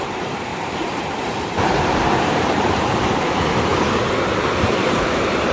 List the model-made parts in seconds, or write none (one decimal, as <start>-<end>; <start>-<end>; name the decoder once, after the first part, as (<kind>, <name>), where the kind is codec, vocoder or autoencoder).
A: 0.0-3.7 (vocoder, BigVGAN v2); 4.9-5.5